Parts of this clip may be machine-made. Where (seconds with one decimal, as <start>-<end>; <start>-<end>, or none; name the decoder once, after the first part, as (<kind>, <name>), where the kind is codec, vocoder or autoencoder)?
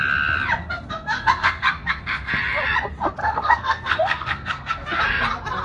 0.6-2.3 (codec, SNAC); 3.2-5.0